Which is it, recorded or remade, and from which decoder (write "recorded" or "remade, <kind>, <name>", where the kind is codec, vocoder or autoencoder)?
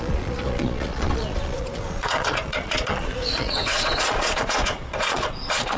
remade, vocoder, Vocos